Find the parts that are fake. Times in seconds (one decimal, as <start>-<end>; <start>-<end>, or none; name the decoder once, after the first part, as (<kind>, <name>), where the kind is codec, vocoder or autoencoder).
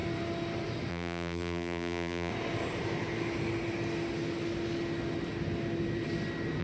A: 0.9-2.3 (vocoder, BigVGAN v2)